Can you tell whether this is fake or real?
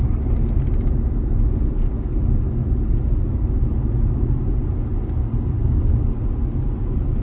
real